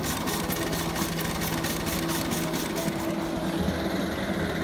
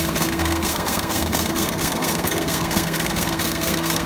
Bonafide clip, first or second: first